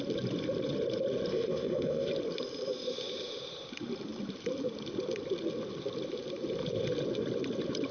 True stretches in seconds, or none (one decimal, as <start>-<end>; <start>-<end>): 0.0-1.3; 2.1-7.9